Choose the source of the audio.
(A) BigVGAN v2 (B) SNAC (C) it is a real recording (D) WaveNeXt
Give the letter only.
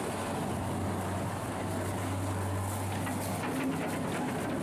C